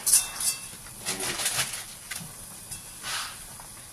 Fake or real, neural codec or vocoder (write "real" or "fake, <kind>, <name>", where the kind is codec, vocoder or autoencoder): real